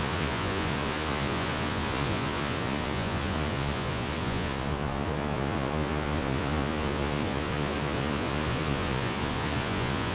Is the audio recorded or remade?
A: remade